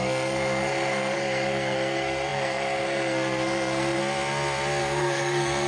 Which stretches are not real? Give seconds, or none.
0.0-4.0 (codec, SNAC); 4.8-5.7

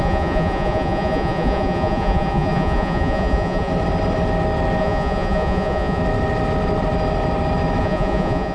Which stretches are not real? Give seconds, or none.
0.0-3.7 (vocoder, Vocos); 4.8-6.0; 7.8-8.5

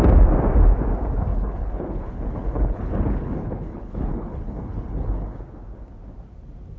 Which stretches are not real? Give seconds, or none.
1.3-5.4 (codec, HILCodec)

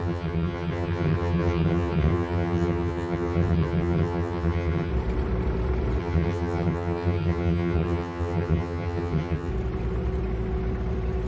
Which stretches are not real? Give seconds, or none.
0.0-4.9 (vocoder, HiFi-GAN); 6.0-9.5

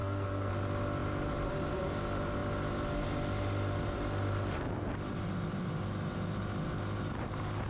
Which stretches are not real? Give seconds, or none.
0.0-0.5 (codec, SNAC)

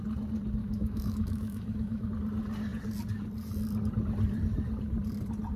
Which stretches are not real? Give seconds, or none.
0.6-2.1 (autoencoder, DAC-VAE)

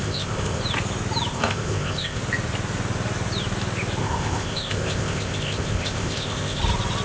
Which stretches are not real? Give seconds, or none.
0.0-0.6 (codec, ZipCodec); 1.3-2.2; 4.0-6.6

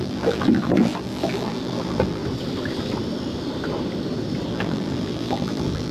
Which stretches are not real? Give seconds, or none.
0.0-2.2 (vocoder, BigVGAN v2); 4.5-5.9